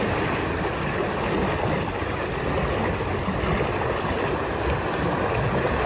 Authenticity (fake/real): real